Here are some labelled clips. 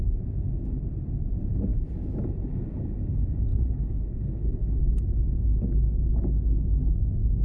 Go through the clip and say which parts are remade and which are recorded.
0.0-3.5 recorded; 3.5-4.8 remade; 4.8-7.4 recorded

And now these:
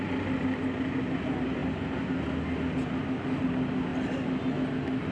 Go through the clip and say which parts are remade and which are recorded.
0.0-5.1 recorded

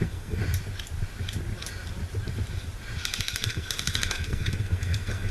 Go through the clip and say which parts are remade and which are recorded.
0.0-0.4 remade; 0.4-3.2 recorded; 3.2-5.3 remade